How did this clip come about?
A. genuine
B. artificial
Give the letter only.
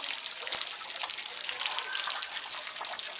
A